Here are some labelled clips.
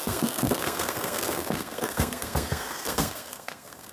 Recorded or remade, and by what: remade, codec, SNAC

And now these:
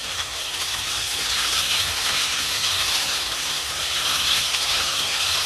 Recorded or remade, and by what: remade, codec, SNAC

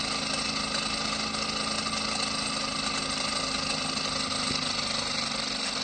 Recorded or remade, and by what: recorded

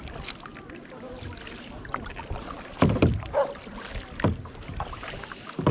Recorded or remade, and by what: recorded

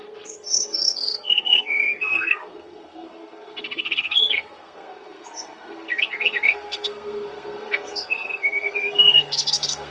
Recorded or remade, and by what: remade, codec, SNAC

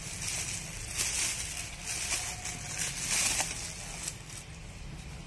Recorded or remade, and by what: recorded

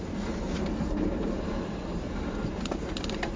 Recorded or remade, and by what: recorded